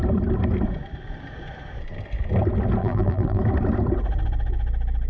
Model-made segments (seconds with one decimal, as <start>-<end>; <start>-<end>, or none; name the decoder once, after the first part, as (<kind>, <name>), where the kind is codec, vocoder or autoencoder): 2.8-3.4 (vocoder, BigVGAN v2)